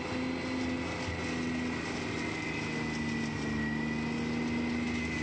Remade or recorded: recorded